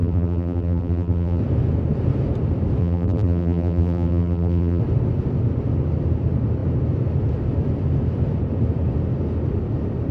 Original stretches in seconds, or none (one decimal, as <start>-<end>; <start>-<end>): 1.4-2.8; 4.8-10.1